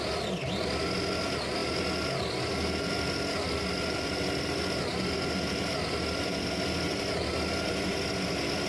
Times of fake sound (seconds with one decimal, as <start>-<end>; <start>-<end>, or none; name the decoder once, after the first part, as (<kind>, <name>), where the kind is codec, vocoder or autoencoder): none